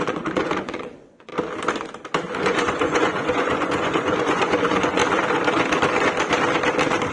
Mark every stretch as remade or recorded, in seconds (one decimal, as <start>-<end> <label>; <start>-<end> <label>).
0.0-1.3 remade; 1.3-2.4 recorded; 2.4-5.0 remade; 5.0-7.1 recorded